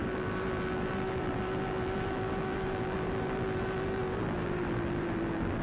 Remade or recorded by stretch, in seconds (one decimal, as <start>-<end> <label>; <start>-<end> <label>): 0.0-5.6 remade